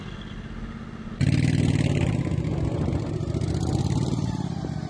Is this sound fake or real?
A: real